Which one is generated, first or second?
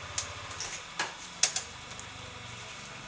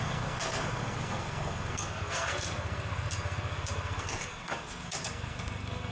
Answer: second